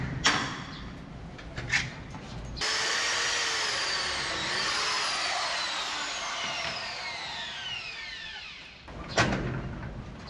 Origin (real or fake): real